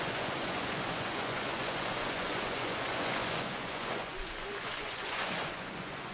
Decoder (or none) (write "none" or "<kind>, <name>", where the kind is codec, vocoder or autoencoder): vocoder, Vocos